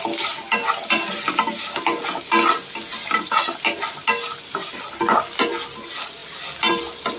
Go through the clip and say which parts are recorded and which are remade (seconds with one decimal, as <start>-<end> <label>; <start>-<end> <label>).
0.0-7.2 recorded